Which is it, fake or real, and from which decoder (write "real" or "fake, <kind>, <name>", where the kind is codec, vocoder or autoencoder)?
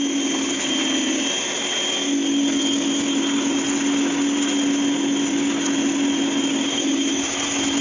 real